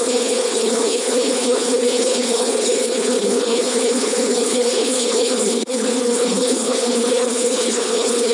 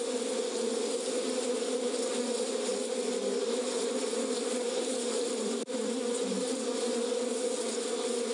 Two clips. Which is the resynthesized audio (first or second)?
first